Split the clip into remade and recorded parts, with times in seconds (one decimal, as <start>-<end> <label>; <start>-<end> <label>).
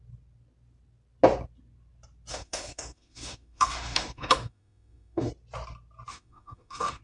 0.0-2.3 recorded; 2.3-5.3 remade; 5.3-6.1 recorded; 6.1-7.0 remade